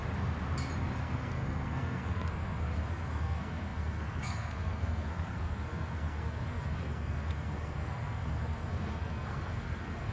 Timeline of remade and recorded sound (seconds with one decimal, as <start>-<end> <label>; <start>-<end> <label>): 0.0-1.0 recorded; 1.0-10.1 remade